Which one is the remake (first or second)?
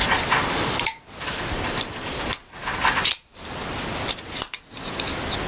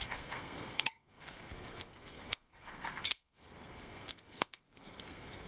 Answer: second